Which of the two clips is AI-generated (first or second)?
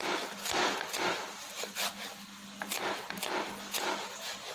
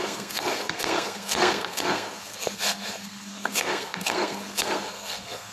second